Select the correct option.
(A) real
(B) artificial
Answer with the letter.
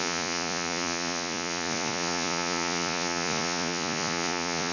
B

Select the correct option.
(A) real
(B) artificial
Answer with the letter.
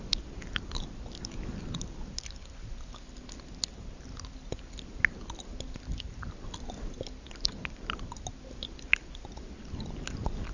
A